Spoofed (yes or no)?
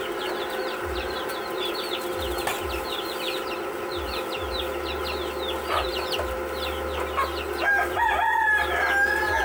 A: no